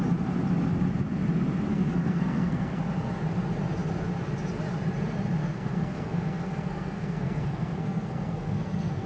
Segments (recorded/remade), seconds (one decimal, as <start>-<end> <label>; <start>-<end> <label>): 0.0-1.7 recorded; 1.7-2.8 remade; 2.8-5.4 recorded; 5.4-9.1 remade